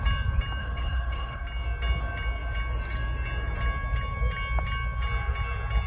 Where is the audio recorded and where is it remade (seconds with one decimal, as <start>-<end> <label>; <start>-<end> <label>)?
0.0-0.6 recorded; 0.6-1.4 remade; 1.4-5.9 recorded